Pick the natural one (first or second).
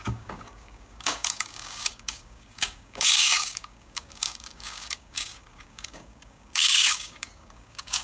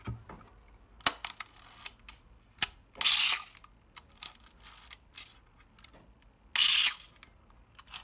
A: second